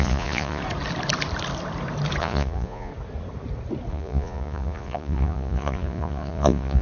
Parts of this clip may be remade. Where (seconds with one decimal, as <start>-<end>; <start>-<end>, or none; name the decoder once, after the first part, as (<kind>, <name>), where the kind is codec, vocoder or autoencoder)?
0.0-0.6 (vocoder, Vocos); 2.2-2.9; 3.9-6.8